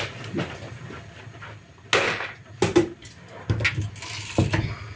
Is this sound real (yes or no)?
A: yes